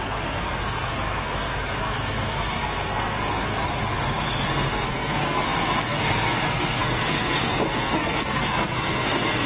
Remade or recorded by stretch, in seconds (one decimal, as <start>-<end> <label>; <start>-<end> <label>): 0.0-3.6 remade; 3.6-4.5 recorded; 4.5-9.5 remade